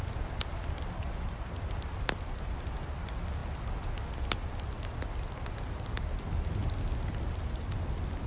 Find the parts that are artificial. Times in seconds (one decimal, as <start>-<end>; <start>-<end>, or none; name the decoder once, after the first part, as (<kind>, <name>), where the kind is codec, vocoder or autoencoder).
none